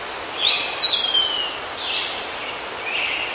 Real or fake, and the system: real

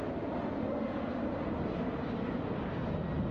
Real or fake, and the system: real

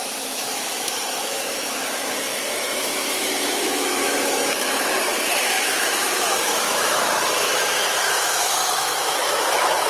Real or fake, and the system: fake, autoencoder, DAC-VAE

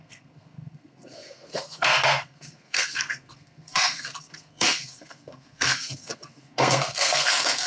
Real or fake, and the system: fake, codec, SNAC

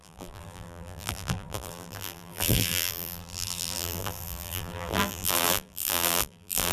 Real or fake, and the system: fake, vocoder, BigVGAN v2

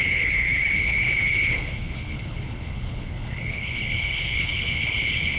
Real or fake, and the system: fake, codec, HILCodec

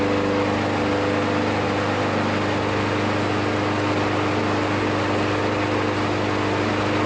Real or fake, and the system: real